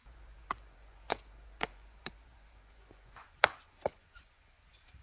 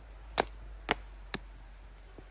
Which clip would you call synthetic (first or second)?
first